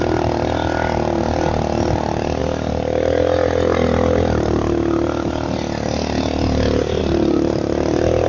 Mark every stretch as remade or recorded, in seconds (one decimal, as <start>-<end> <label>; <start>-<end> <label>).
0.0-8.3 recorded